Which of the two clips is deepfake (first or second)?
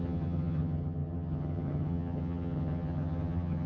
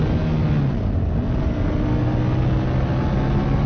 first